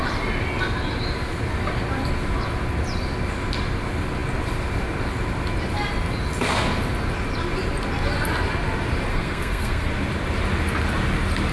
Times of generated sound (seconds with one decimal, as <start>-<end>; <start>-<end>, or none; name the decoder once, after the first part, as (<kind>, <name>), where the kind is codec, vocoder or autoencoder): 9.1-9.9 (codec, SNAC)